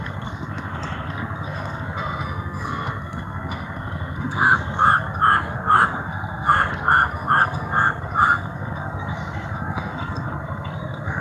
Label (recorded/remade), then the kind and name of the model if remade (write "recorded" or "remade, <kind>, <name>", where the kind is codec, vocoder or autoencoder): remade, codec, SNAC